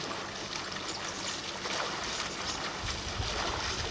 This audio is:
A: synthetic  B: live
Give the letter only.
B